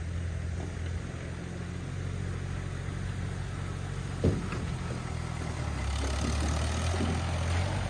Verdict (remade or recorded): recorded